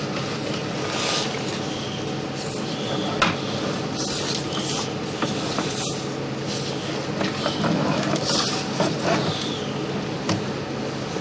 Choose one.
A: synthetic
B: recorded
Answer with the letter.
B